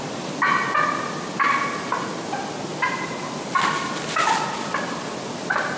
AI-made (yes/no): no